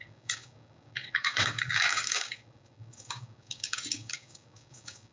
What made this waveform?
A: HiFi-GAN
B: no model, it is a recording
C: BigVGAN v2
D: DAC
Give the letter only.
D